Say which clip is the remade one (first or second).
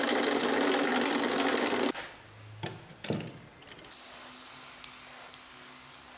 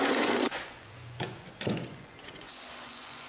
second